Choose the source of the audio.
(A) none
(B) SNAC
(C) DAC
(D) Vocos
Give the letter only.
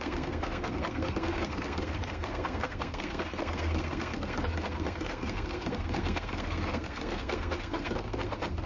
B